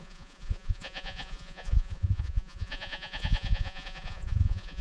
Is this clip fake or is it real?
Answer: fake